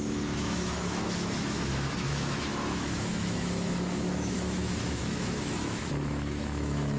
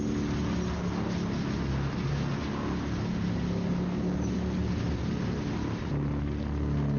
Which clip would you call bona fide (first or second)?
second